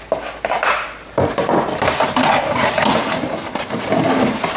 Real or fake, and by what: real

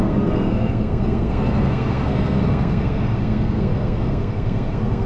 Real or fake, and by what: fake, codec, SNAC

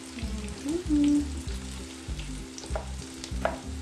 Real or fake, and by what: real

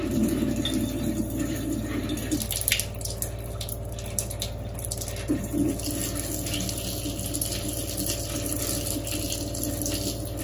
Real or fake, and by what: real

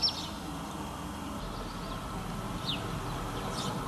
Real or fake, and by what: real